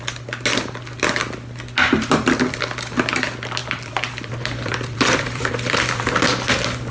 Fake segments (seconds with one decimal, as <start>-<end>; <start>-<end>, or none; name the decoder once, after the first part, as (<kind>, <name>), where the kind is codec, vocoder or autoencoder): 3.6-6.1 (vocoder, BigVGAN v2)